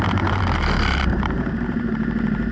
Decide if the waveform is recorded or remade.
remade